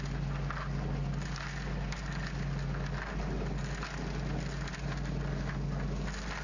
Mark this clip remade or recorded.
recorded